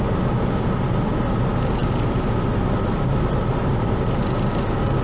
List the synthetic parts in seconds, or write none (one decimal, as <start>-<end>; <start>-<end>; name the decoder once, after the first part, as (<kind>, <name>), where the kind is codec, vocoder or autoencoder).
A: none